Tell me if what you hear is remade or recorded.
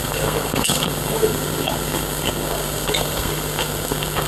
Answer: remade